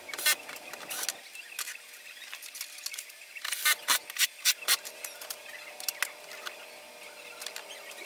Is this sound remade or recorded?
recorded